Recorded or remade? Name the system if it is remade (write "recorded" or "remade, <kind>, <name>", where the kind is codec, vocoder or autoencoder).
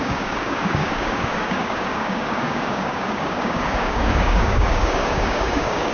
remade, codec, DAC